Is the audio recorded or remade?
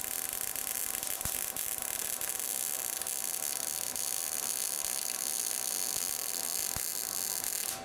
recorded